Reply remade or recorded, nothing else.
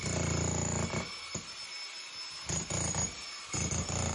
recorded